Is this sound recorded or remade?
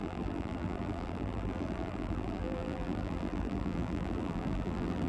remade